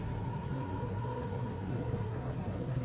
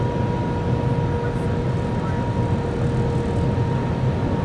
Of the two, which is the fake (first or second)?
first